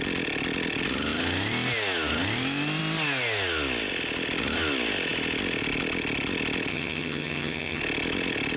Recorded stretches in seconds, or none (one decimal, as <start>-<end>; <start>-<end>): 0.0-6.7; 7.8-8.6